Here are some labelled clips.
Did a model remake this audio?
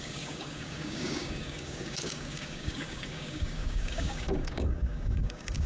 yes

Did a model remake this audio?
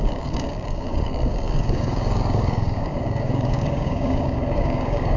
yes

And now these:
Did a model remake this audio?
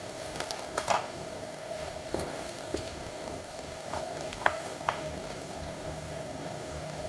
yes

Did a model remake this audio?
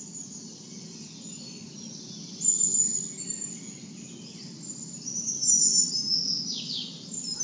no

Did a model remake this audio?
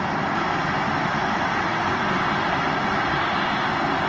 no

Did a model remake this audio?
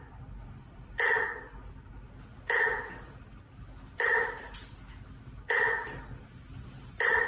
no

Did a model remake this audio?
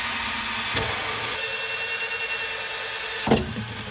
no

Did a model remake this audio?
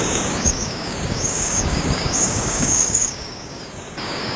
yes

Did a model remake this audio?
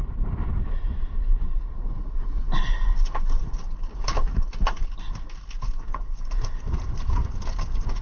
no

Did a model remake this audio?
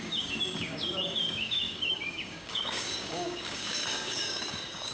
yes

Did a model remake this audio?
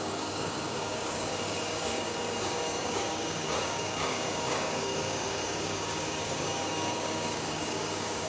yes